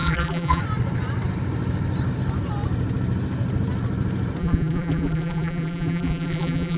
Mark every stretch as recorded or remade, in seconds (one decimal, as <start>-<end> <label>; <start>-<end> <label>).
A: 0.0-0.6 remade; 0.6-4.4 recorded; 4.4-6.8 remade